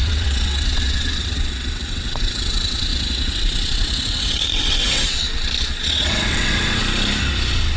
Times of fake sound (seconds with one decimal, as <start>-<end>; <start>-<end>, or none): 0.0-5.3; 5.8-6.8